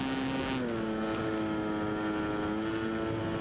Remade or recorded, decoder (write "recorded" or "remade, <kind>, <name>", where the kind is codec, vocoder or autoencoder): recorded